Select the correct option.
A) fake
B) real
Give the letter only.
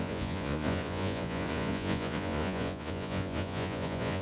A